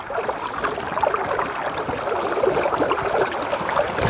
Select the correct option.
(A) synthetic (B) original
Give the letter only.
B